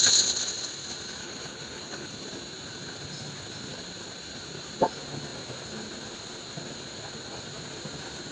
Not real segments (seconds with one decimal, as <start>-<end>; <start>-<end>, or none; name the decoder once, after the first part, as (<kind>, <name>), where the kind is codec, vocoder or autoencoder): 1.2-2.1 (codec, HILCodec)